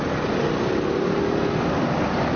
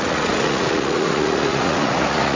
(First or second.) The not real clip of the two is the second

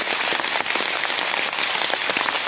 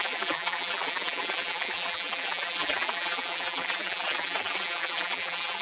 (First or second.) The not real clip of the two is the second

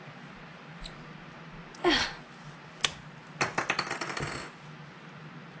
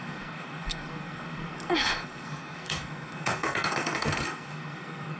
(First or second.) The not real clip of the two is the second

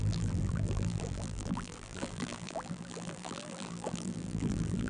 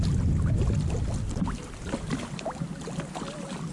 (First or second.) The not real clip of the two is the first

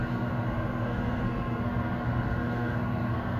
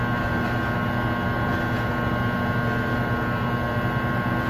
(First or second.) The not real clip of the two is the first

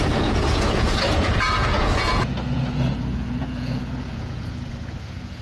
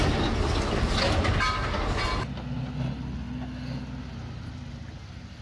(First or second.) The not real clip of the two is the first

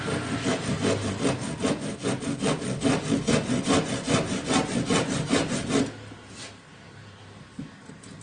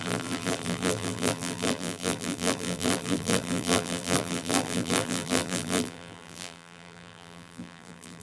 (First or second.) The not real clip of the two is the second